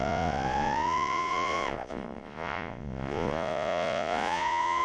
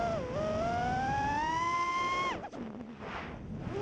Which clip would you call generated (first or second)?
first